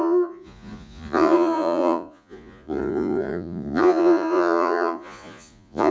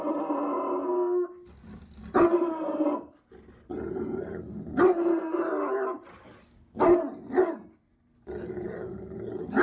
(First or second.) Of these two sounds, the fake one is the first